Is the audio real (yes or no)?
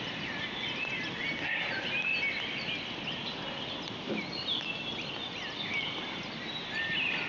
yes